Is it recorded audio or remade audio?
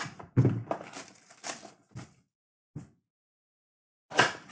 recorded